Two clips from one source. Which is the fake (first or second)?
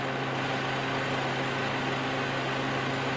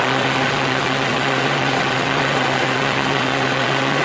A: second